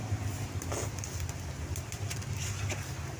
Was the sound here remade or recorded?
recorded